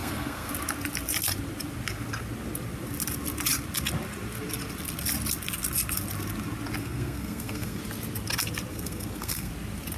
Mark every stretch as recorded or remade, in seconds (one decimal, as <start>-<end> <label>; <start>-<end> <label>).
0.0-0.5 remade; 0.5-6.8 recorded; 6.8-7.8 remade; 7.8-8.7 recorded; 8.7-9.5 remade; 9.5-10.0 recorded